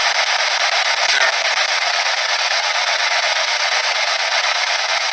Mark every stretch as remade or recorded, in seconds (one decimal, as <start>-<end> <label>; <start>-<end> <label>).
0.0-1.7 recorded; 1.7-5.1 remade